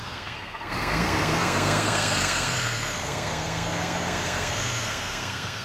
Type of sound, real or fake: fake